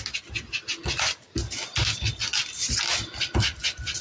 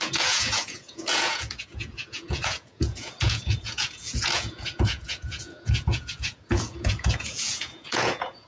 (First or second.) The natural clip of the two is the first